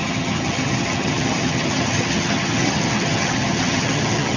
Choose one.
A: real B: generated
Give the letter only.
B